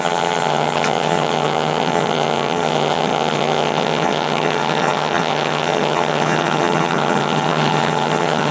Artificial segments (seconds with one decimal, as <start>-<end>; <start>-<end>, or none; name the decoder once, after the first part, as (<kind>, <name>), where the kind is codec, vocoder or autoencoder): 0.0-8.5 (vocoder, HiFi-GAN)